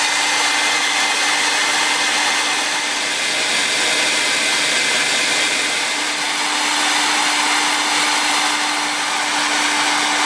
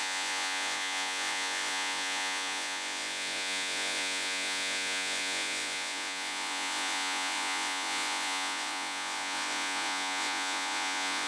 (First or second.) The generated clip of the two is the second